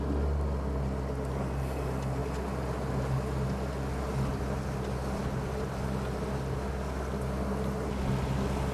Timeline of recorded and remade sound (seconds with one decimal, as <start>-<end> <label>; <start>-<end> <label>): 0.0-8.7 recorded